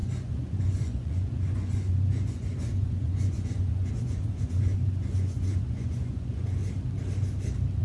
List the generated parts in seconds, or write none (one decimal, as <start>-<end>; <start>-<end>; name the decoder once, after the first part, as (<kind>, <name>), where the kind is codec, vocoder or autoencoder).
0.0-6.6 (vocoder, Vocos)